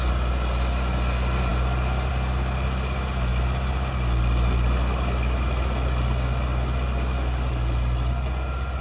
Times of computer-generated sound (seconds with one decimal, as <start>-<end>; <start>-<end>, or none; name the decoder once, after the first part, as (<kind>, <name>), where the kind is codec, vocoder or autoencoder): none

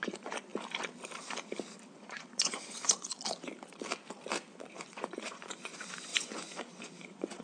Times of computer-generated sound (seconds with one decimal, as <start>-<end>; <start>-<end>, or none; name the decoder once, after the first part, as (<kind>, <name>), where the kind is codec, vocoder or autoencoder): 0.0-0.5 (vocoder, Vocos); 1.9-3.1; 4.7-7.4